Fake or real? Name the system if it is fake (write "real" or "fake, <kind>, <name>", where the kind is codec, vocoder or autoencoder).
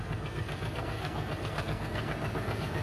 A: fake, codec, SNAC